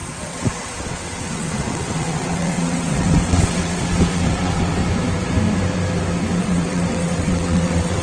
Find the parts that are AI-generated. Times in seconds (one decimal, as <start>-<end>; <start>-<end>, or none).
0.0-4.8; 6.4-8.0